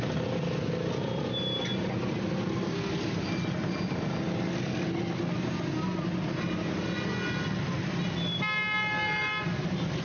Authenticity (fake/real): real